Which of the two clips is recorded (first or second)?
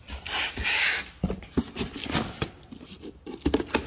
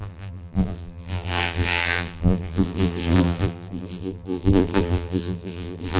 first